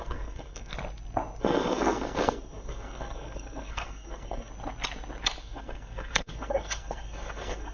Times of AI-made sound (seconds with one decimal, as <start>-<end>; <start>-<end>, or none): 0.0-0.7; 1.4-4.5; 5.4-7.7